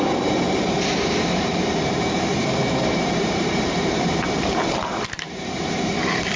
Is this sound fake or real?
fake